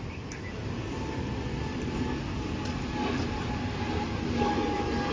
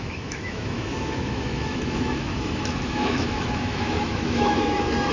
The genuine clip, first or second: first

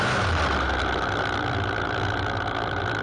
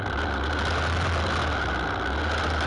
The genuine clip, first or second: second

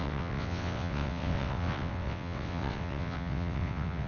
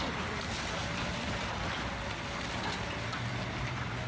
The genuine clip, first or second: second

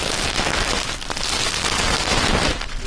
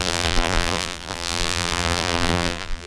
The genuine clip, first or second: first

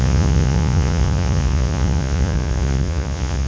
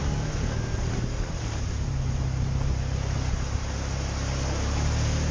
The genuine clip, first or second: second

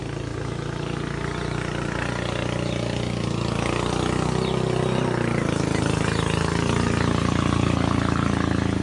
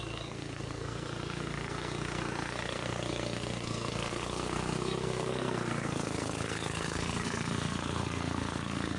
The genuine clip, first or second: first